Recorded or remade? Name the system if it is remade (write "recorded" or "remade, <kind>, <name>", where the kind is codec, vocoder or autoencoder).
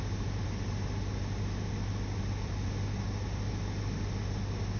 recorded